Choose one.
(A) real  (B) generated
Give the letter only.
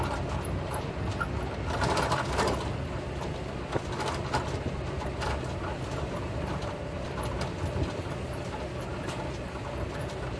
A